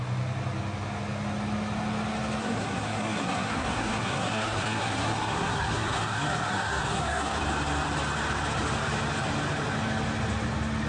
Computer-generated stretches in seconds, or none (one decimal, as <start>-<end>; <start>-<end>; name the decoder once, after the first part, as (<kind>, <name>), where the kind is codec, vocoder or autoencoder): 2.4-7.4 (codec, SNAC)